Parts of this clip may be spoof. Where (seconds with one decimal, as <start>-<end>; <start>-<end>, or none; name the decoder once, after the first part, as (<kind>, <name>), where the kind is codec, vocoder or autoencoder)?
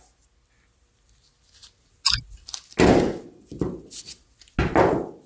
none